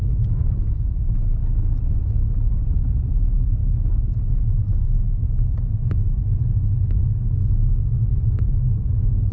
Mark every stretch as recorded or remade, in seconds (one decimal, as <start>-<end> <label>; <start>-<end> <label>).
0.0-2.0 recorded; 2.0-2.6 remade; 2.6-9.3 recorded

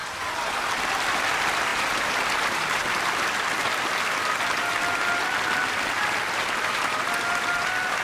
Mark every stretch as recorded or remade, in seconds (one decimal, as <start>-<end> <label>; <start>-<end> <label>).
0.0-8.0 recorded

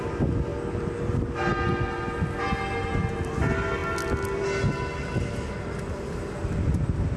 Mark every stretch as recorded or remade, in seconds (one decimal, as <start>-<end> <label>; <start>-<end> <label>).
0.0-7.2 recorded

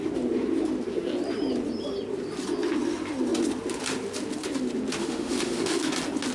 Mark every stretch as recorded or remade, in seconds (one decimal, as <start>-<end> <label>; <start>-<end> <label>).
0.0-5.0 recorded; 5.0-5.8 remade; 5.8-6.3 recorded

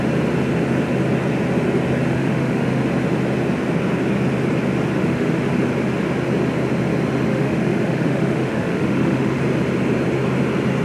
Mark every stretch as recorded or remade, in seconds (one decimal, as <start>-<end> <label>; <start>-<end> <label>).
0.0-2.1 recorded; 2.1-2.8 remade; 2.8-5.0 recorded; 5.0-5.5 remade; 5.5-7.3 recorded; 7.3-9.4 remade; 9.4-10.8 recorded

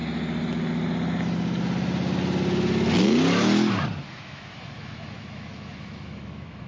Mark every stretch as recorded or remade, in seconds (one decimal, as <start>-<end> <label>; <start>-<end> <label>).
0.0-4.0 recorded; 4.0-6.7 remade

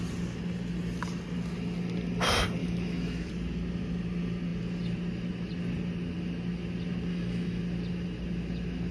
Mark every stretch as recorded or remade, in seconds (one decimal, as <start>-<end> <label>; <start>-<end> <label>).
0.0-2.6 recorded; 2.6-3.3 remade; 3.3-7.1 recorded; 7.1-7.6 remade; 7.6-8.9 recorded